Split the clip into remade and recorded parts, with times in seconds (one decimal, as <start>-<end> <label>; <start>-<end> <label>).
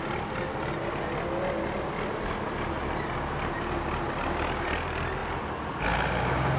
0.0-6.6 recorded